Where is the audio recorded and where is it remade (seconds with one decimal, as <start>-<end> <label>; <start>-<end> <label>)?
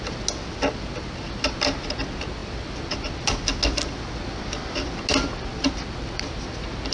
0.0-6.9 recorded